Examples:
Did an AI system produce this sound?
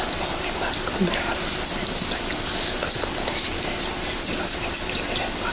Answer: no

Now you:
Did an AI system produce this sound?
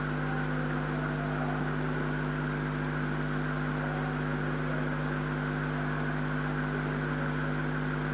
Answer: no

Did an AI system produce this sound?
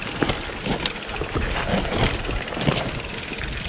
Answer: no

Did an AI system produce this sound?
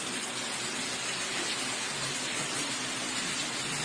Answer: no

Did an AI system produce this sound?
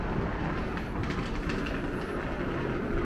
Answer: no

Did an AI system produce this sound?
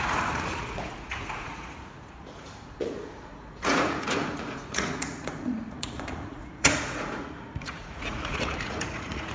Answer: yes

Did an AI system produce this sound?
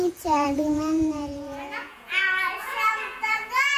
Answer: yes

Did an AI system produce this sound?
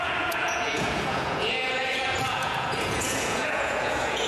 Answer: yes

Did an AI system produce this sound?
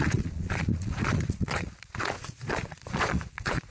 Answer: yes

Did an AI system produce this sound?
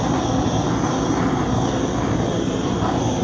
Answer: no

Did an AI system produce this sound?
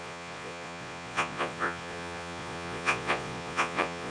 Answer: yes